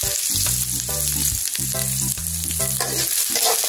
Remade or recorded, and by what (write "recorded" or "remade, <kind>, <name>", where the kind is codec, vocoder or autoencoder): recorded